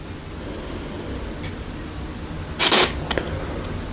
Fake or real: real